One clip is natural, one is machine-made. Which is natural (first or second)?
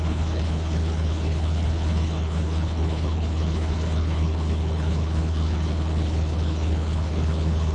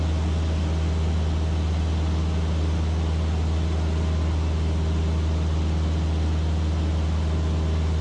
second